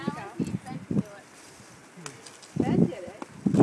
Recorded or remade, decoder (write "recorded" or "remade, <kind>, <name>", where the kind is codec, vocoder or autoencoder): recorded